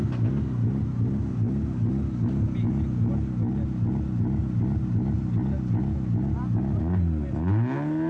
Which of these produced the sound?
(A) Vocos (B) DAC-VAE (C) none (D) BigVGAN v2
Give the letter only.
C